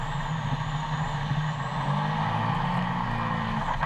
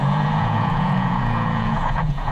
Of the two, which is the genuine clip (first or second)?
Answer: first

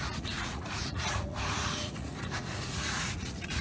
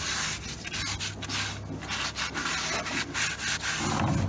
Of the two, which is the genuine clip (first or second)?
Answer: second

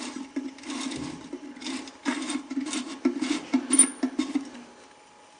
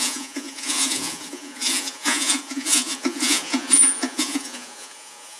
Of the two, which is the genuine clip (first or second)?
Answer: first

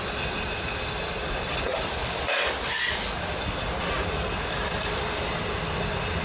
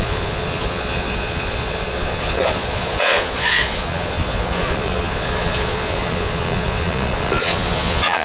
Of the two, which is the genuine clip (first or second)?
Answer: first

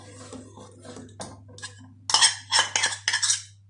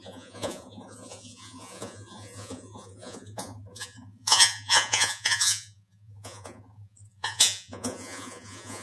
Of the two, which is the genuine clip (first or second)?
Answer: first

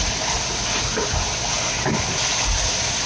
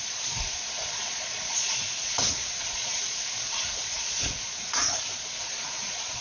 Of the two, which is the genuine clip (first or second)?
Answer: first